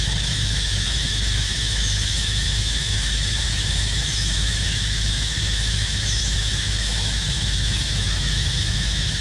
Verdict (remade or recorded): remade